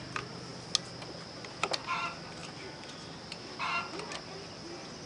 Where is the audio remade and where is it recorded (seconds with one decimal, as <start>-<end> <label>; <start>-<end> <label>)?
0.0-5.1 recorded